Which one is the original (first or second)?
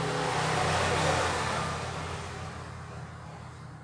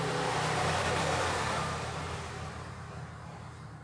first